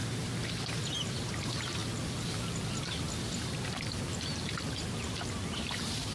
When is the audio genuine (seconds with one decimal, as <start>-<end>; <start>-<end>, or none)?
0.0-1.1; 1.8-5.5